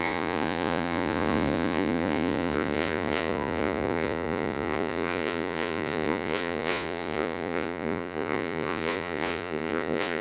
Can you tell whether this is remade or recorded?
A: remade